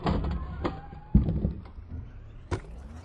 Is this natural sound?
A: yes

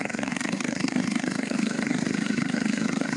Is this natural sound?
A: no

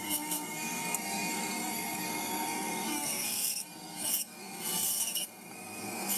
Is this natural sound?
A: no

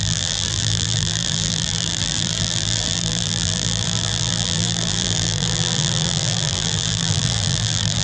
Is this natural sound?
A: no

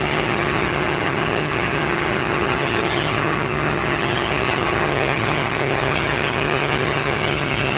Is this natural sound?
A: no